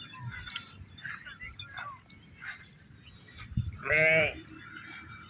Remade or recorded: recorded